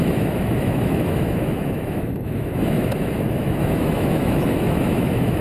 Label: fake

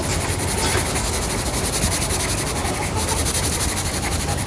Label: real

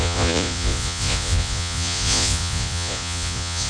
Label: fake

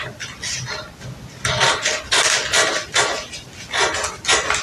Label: real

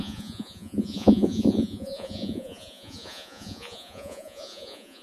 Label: fake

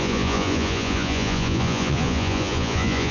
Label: fake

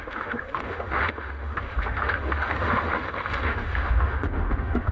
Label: fake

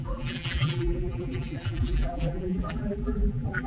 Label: fake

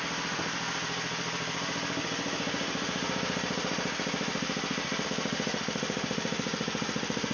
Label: fake